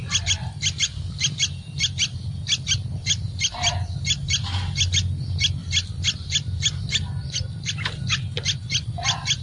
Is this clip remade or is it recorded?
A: recorded